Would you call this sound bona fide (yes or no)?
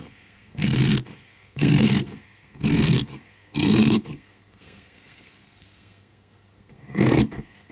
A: no